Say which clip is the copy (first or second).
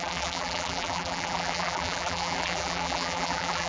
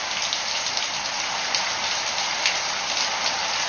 first